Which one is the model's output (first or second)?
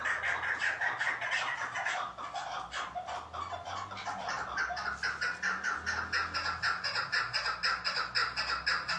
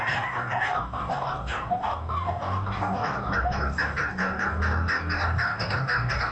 second